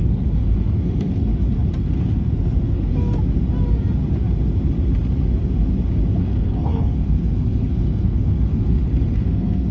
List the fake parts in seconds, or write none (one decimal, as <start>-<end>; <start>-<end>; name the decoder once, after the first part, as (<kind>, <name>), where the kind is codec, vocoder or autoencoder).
0.0-1.3 (codec, SNAC); 1.9-2.9; 6.2-9.7